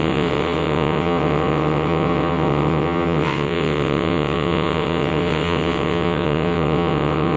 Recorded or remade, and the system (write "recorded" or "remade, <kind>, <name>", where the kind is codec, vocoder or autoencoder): remade, vocoder, WaveNeXt